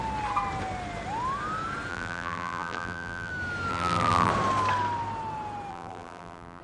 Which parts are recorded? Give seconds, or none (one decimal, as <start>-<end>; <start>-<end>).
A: 0.0-1.9; 3.3-3.7; 4.3-5.7